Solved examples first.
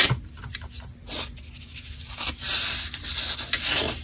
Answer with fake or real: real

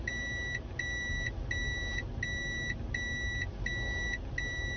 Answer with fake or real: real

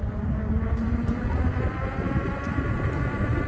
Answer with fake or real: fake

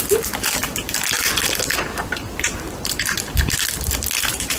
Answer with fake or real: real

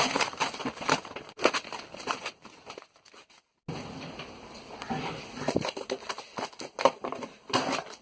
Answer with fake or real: real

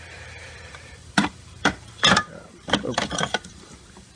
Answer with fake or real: fake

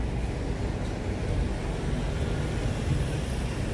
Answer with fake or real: real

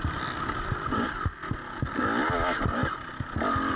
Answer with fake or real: real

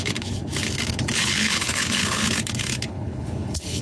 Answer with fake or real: fake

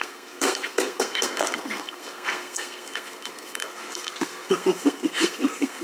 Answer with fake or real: fake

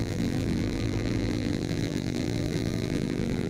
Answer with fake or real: fake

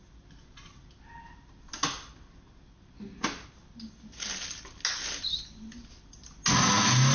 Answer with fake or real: real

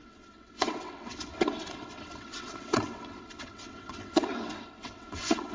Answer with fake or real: fake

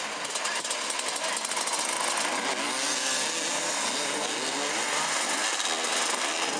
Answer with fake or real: real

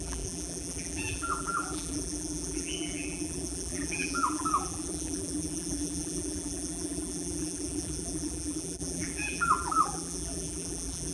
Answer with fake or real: fake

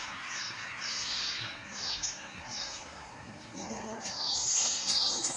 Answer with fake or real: fake